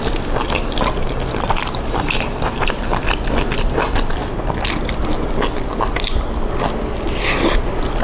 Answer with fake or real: real